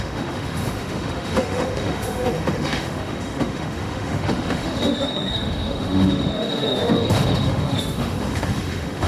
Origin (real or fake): fake